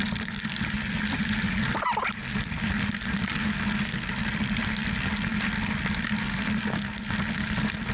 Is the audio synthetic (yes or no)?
no